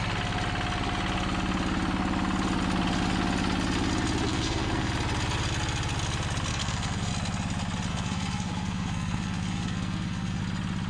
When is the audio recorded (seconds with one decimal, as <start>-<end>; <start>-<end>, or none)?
0.0-4.3; 4.9-6.5; 7.1-7.9; 10.4-10.9

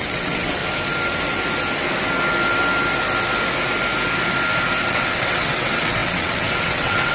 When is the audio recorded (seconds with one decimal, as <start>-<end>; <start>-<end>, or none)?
0.6-4.9

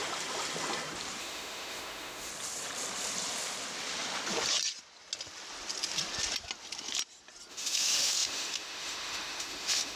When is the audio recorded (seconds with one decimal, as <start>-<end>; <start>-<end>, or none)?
0.0-1.2; 2.3-7.5

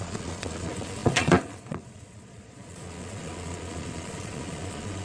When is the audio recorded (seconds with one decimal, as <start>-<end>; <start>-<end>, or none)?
none

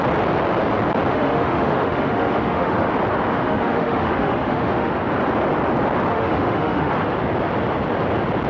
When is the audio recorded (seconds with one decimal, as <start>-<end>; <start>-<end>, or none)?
0.0-1.1; 2.9-3.3; 4.9-6.1; 6.9-8.5